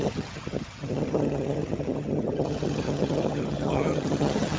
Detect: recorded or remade remade